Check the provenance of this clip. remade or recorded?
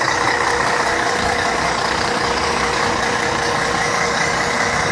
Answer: remade